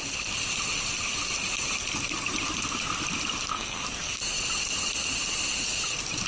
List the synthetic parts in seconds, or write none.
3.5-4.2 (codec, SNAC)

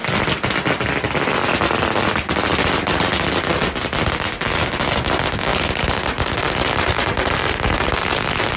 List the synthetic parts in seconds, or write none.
none

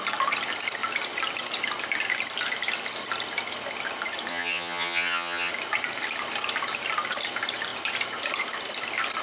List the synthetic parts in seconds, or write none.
4.3-5.5 (vocoder, HiFi-GAN)

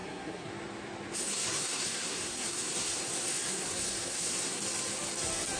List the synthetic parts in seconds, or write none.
0.0-0.5 (codec, SNAC); 1.2-4.6

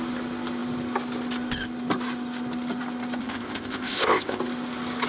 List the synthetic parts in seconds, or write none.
3.2-4.4 (codec, ZipCodec)